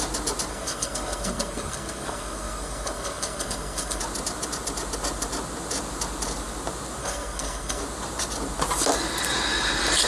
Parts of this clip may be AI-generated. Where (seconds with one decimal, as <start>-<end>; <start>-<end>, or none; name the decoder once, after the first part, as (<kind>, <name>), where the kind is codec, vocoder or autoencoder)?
0.5-4.0 (codec, SNAC); 7.0-7.8